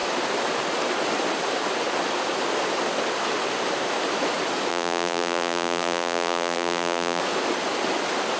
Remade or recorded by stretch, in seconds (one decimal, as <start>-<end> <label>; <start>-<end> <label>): 0.0-4.7 recorded; 4.7-7.2 remade; 7.2-8.4 recorded